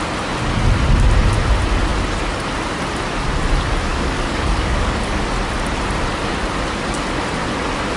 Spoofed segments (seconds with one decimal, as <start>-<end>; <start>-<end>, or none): 3.9-5.2